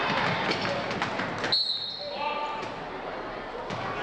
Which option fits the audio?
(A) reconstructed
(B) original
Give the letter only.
B